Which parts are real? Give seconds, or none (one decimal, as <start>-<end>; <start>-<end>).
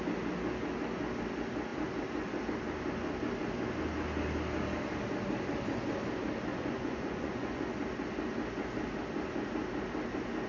0.0-6.5; 7.6-10.5